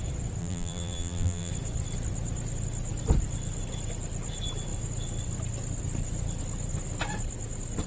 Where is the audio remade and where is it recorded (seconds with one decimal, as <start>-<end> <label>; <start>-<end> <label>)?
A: 0.0-0.4 recorded; 0.4-1.5 remade; 1.5-7.9 recorded